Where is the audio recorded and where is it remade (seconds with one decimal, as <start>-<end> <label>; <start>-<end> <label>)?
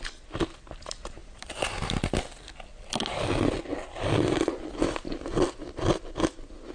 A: 0.0-6.7 recorded